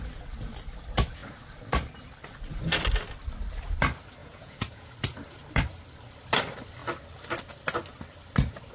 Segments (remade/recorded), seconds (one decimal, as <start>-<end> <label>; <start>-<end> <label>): 0.0-4.2 recorded; 4.2-4.9 remade; 4.9-8.7 recorded